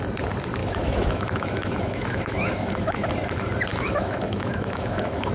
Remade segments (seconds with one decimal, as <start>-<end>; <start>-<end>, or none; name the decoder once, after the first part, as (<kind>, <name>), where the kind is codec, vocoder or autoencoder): 0.6-3.1 (autoencoder, DAC-VAE); 3.7-5.3